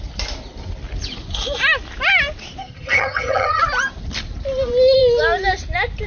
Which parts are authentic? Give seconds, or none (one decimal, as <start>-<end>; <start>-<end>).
0.0-2.6; 3.6-6.1